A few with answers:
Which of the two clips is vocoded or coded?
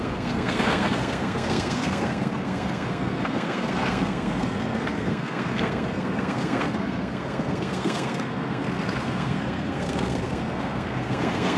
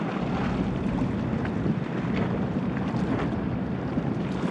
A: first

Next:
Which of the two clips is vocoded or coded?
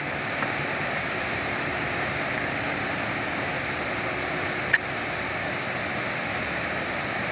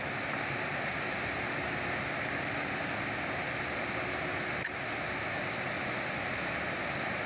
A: first